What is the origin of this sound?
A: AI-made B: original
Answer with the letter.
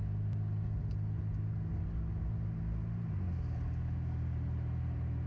B